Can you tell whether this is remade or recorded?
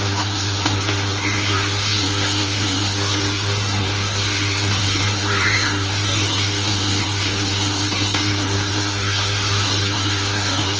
remade